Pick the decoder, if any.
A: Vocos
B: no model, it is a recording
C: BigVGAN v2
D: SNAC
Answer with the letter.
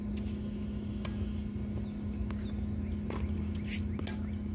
B